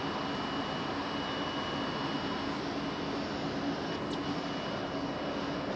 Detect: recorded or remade recorded